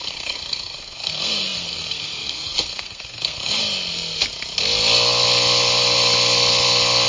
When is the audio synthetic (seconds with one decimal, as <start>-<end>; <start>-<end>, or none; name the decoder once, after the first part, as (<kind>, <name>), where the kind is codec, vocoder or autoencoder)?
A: 0.0-3.6 (codec, SNAC)